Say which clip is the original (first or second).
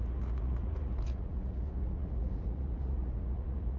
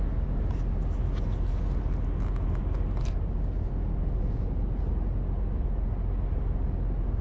second